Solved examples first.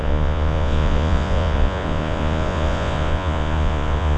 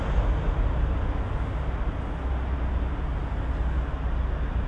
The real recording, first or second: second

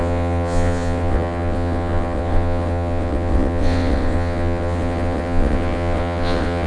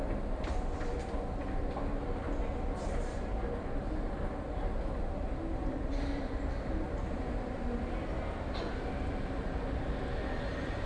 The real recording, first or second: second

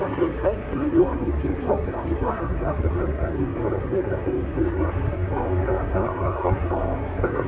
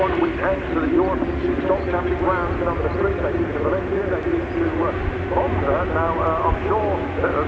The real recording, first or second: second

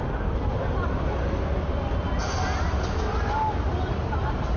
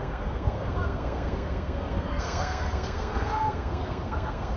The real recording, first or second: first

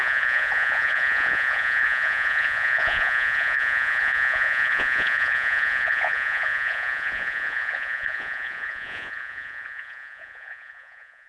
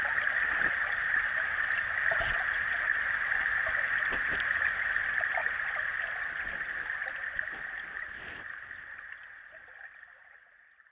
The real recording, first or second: second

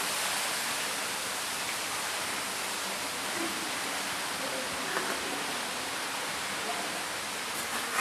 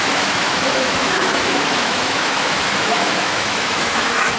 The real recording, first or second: first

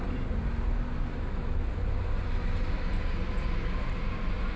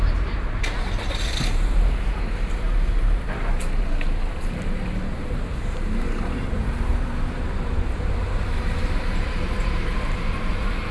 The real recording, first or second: first